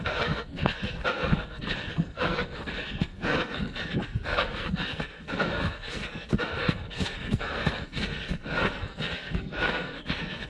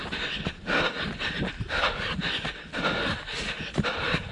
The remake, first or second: first